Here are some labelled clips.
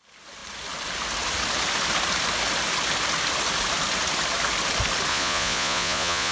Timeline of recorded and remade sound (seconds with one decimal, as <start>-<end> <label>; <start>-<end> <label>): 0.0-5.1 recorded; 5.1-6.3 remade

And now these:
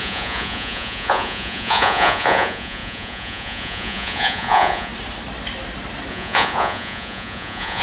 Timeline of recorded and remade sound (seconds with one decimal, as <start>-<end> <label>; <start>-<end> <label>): 0.0-4.9 remade; 4.9-6.1 recorded; 6.1-7.8 remade

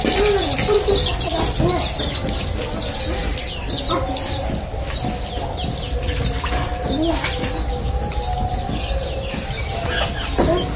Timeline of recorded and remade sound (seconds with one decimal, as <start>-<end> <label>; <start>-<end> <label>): 0.0-10.8 recorded

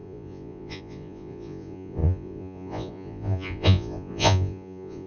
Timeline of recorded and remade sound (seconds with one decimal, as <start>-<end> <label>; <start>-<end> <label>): 0.0-5.1 remade